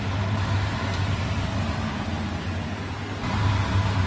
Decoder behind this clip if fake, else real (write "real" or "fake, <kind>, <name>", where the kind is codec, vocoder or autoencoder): real